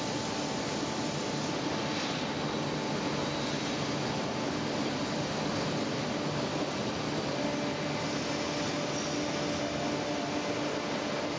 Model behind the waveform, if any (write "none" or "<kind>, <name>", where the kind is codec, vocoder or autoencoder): none